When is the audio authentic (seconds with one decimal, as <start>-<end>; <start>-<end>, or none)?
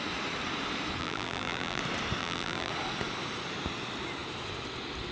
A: 0.0-1.0; 1.8-2.2; 2.7-5.1